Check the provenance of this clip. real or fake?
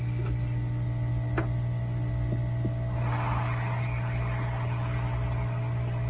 real